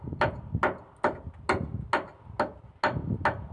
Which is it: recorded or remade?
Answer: recorded